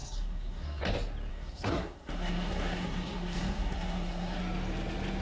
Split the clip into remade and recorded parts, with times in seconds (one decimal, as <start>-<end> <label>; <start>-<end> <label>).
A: 0.0-0.8 remade; 0.8-1.3 recorded; 1.3-4.4 remade; 4.4-5.2 recorded